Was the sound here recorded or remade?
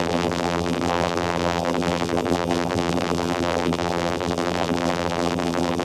remade